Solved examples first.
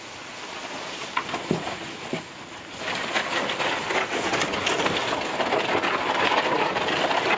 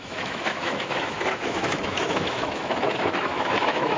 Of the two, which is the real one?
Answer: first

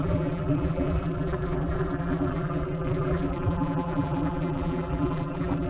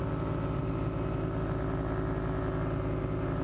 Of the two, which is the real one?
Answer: second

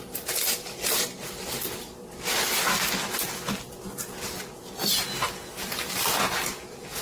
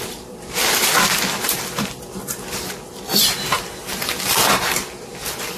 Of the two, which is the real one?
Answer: first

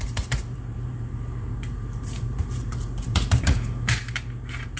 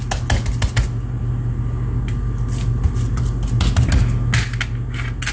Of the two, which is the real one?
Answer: second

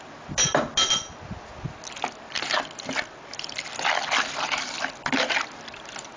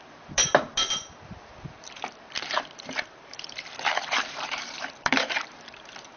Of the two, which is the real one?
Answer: first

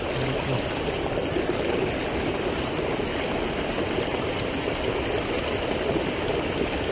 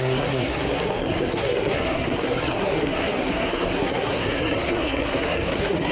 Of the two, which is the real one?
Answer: first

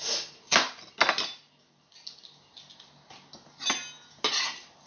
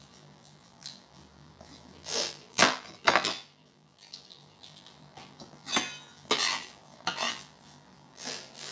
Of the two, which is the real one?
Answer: first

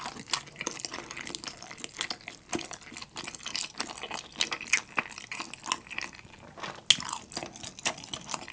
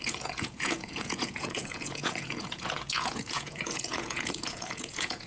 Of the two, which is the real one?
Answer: first